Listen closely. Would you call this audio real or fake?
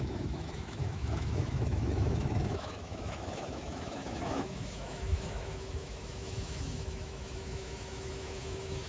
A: fake